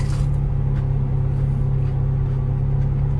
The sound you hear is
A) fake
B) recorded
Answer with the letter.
B